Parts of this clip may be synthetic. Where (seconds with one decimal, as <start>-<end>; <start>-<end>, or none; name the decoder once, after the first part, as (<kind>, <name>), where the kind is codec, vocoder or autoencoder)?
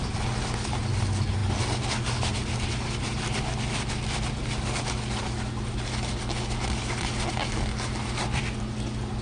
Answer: none